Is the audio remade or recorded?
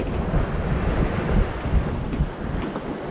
recorded